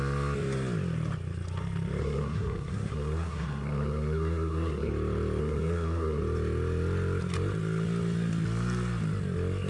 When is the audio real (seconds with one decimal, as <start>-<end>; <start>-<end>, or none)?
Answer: 0.0-2.0; 4.9-5.4; 6.2-9.7